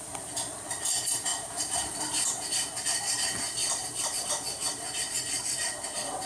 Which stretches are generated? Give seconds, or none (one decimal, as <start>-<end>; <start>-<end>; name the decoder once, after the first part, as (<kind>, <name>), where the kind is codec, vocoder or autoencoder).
1.3-2.3 (vocoder, BigVGAN v2); 3.8-4.3